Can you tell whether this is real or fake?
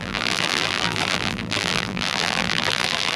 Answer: fake